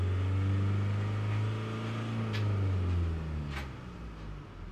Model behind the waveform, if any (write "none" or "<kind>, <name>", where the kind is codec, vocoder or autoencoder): none